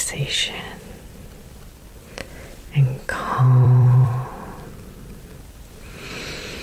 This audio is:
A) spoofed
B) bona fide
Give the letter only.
A